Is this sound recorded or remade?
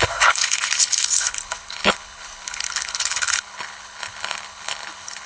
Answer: remade